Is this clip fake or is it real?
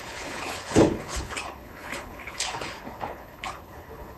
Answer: fake